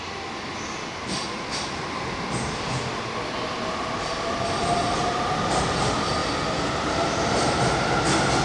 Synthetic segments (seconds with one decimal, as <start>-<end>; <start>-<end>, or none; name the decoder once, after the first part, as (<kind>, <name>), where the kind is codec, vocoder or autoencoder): none